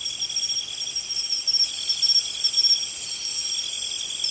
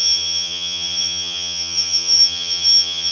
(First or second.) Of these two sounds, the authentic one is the first